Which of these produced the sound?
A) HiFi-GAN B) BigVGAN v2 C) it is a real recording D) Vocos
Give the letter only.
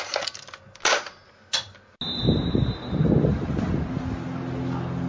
C